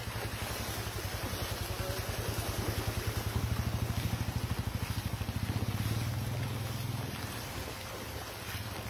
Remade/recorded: recorded